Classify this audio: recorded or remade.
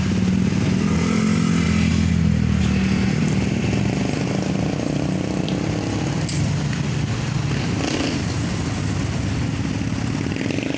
recorded